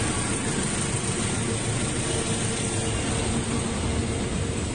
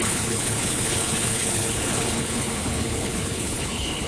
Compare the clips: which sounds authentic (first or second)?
first